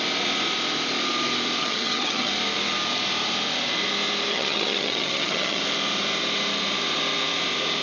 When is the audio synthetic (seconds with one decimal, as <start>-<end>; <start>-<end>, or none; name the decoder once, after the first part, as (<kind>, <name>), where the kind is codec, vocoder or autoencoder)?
1.6-2.3 (vocoder, HiFi-GAN); 4.3-5.6